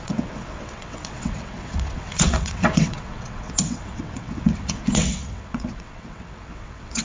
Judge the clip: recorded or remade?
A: remade